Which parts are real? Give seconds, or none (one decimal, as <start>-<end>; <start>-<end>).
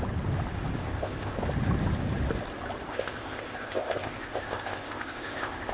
0.0-0.8; 1.4-2.9